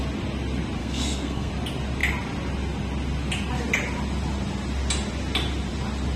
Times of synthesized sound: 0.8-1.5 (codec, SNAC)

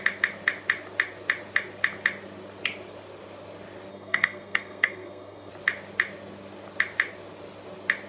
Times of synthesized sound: 3.9-5.5 (codec, SNAC)

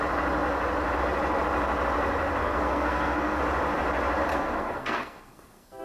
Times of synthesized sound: 2.4-3.4 (codec, SNAC); 4.3-5.8

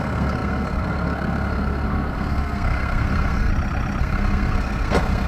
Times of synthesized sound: 0.0-3.5 (codec, SNAC); 4.0-5.3

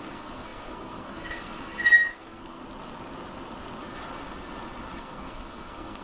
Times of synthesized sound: 0.0-2.6 (codec, SNAC); 5.0-6.0

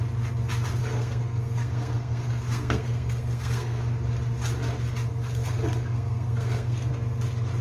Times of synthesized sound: 0.8-3.8 (codec, SNAC); 5.1-6.9